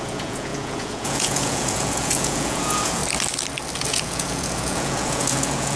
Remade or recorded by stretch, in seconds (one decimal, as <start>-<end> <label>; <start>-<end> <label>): 0.0-3.0 remade; 3.0-3.8 recorded; 3.8-5.8 remade